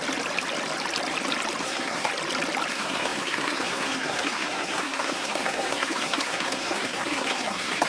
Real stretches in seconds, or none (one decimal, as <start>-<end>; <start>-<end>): 0.0-1.6; 2.1-2.7